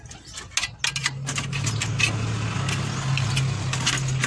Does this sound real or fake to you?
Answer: real